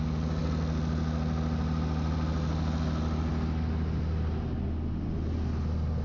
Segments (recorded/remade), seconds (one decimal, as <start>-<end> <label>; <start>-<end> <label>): 0.0-6.0 recorded

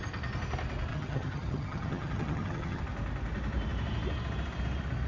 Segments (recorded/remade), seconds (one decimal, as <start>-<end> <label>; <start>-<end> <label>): 0.0-0.9 recorded; 0.9-2.8 remade; 2.8-5.1 recorded

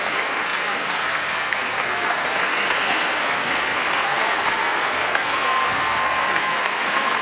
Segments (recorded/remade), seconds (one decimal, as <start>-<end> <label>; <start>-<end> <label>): 0.0-7.2 remade

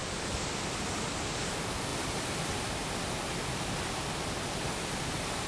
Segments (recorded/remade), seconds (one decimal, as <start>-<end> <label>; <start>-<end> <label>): 0.0-5.5 recorded

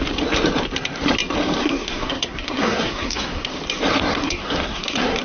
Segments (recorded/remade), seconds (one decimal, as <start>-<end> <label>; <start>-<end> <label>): 0.0-1.6 recorded; 1.6-3.5 remade; 3.5-4.1 recorded; 4.1-5.2 remade

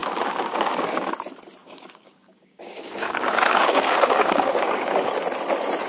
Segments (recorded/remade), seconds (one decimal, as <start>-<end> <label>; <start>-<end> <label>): 0.0-1.1 remade; 1.1-1.6 recorded; 1.6-5.1 remade; 5.1-5.9 recorded

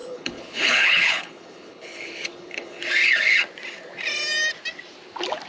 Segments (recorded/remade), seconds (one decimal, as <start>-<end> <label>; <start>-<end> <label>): 0.0-2.8 remade; 2.8-5.5 recorded

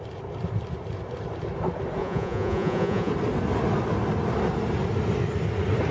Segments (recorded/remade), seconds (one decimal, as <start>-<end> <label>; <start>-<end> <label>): 0.0-2.0 recorded; 2.0-3.1 remade; 3.1-5.9 recorded